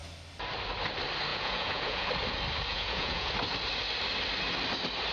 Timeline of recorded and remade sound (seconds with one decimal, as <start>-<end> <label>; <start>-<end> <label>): 0.0-1.3 recorded; 1.3-2.1 remade; 2.1-2.7 recorded; 2.7-3.3 remade; 3.3-5.1 recorded

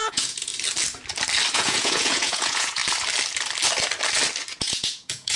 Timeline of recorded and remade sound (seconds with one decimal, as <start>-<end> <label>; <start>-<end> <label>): 0.0-0.5 remade; 0.5-1.5 recorded; 1.5-2.8 remade; 2.8-4.5 recorded; 4.5-5.4 remade

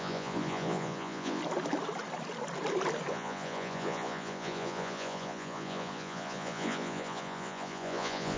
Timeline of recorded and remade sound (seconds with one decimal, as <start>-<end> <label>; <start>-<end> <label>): 0.0-1.4 remade; 1.4-3.1 recorded; 3.1-8.4 remade

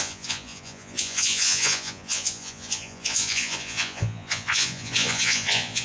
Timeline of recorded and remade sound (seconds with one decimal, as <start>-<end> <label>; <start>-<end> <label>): 0.0-5.8 remade

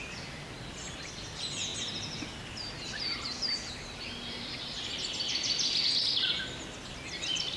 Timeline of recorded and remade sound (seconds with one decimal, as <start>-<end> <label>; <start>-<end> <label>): 0.0-7.6 recorded

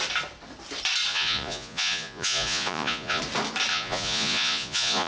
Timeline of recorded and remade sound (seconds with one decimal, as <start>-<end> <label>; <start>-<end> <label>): 0.0-1.1 recorded; 1.1-3.2 remade; 3.2-3.7 recorded; 3.7-5.1 remade

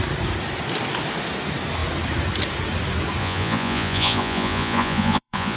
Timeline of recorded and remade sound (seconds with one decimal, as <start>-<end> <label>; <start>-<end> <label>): 0.0-3.2 recorded; 3.2-5.6 remade